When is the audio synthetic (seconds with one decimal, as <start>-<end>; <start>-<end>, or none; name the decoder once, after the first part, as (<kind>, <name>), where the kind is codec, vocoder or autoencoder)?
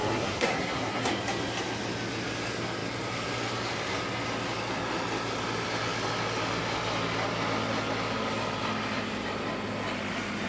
0.0-1.1 (codec, SNAC)